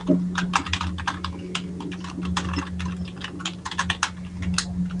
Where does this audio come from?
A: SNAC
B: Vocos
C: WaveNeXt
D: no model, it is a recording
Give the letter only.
D